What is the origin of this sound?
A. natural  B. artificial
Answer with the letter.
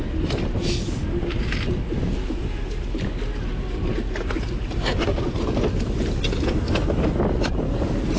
A